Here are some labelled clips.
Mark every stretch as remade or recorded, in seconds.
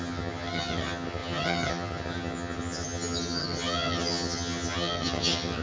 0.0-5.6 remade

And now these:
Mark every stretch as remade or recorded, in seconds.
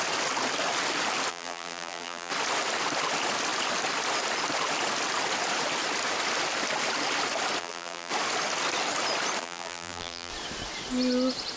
0.0-1.3 recorded; 1.3-2.3 remade; 2.3-7.6 recorded; 7.6-8.1 remade; 8.1-9.4 recorded; 9.4-10.3 remade; 10.3-11.6 recorded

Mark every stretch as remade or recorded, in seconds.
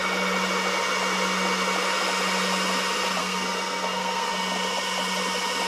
0.0-3.2 recorded; 3.2-4.3 remade; 4.3-5.7 recorded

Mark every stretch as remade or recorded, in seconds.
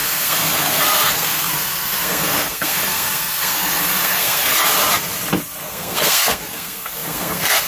0.0-4.5 remade; 4.5-5.6 recorded; 5.6-7.7 remade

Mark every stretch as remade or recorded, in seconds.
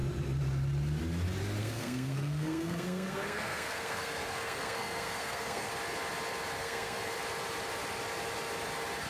0.0-1.6 recorded; 1.6-5.7 remade; 5.7-6.6 recorded; 6.6-7.1 remade; 7.1-9.1 recorded